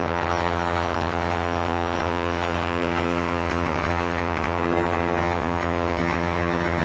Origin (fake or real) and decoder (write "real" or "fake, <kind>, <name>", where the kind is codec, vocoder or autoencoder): fake, vocoder, HiFi-GAN